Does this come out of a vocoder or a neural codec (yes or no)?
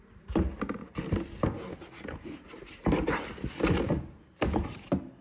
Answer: no